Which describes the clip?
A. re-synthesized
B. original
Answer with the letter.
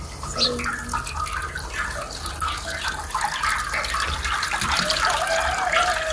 B